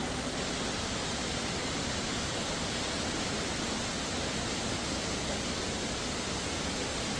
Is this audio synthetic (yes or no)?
no